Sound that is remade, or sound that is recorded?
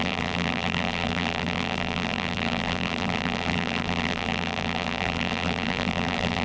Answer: remade